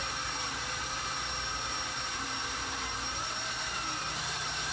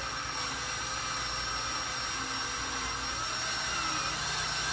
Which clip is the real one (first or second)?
second